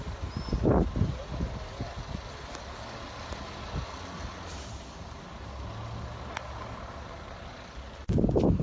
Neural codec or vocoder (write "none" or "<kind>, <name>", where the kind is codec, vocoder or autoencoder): none